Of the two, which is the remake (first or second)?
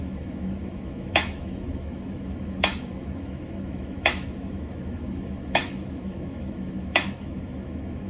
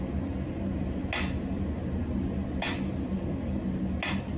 first